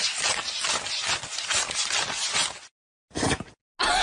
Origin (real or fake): real